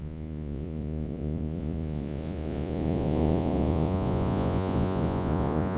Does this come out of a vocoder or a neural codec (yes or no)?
yes